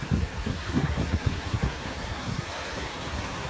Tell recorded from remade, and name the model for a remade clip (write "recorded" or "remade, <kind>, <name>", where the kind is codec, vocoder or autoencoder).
remade, codec, SNAC